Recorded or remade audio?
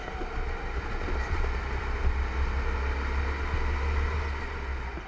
recorded